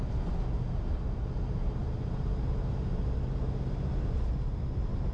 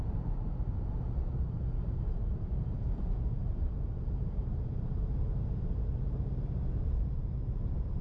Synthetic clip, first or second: second